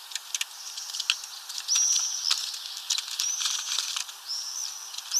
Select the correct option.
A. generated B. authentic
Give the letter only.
B